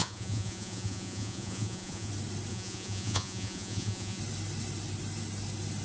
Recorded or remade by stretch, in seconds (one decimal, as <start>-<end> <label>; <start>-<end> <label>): 0.0-2.1 remade; 2.1-2.5 recorded; 2.5-4.2 remade; 4.2-5.8 recorded